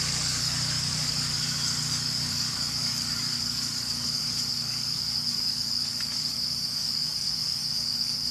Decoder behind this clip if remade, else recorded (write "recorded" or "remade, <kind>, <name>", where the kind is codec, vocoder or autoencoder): remade, codec, DAC